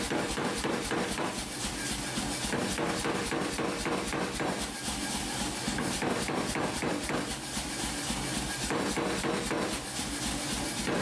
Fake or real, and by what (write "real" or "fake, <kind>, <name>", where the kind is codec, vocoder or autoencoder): fake, vocoder, BigVGAN v2